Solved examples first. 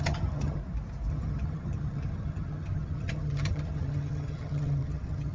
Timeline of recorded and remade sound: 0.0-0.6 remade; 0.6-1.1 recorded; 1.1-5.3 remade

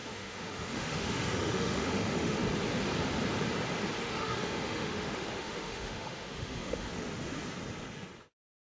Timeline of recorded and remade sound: 0.0-2.4 remade; 2.4-4.0 recorded; 4.0-6.9 remade; 6.9-8.2 recorded; 8.2-8.6 remade

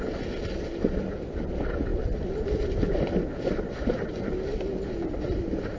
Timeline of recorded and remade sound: 0.0-1.9 recorded; 1.9-4.7 remade; 4.7-5.8 recorded

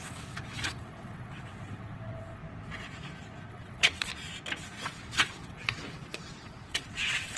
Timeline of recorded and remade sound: 0.0-2.4 remade; 2.4-3.5 recorded; 3.5-4.1 remade; 4.1-5.0 recorded; 5.0-7.4 remade

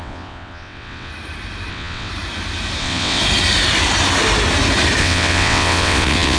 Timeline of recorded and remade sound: 0.0-1.1 remade; 1.1-1.7 recorded; 1.7-2.1 remade; 2.1-2.8 recorded; 2.8-3.2 remade; 3.2-5.0 recorded; 5.0-6.4 remade

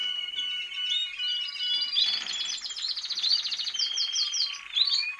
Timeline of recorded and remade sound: 0.0-5.2 recorded

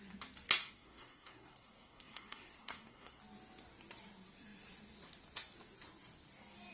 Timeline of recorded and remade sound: 0.0-0.6 recorded; 0.6-3.2 remade; 3.2-6.7 recorded

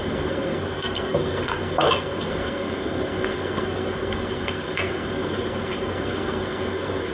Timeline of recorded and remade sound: 0.0-7.1 remade